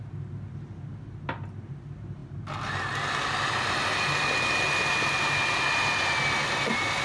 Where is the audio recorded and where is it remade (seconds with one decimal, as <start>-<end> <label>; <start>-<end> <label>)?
0.0-7.0 recorded